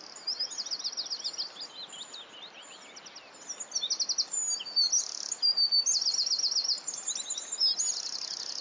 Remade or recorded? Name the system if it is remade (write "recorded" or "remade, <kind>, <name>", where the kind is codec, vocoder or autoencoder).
recorded